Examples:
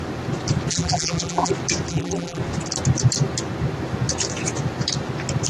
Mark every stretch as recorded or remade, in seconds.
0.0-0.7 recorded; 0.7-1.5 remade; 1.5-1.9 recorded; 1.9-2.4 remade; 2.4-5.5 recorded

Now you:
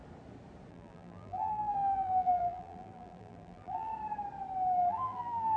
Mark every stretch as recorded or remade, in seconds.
0.0-0.7 recorded; 0.7-3.9 remade; 3.9-4.9 recorded; 4.9-5.6 remade

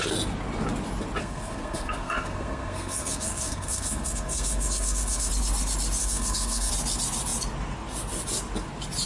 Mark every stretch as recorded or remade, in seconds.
0.0-1.2 recorded; 1.2-5.3 remade; 5.3-6.0 recorded; 6.0-6.7 remade; 6.7-9.1 recorded

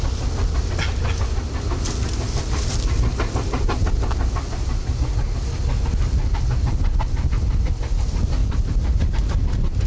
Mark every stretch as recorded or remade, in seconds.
0.0-8.4 recorded; 8.4-9.1 remade; 9.1-9.9 recorded